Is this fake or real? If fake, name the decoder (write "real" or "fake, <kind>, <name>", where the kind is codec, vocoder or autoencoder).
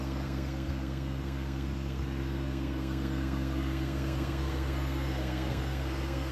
fake, codec, SNAC